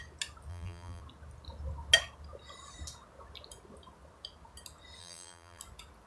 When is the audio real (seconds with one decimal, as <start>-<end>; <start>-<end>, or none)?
0.0-0.5; 1.0-5.0; 5.6-6.1